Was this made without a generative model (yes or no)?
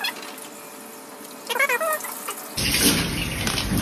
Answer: yes